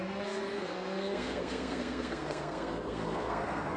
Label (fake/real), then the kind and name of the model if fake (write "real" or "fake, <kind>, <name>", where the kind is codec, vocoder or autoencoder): fake, codec, SNAC